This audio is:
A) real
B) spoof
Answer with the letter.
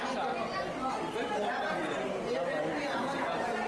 A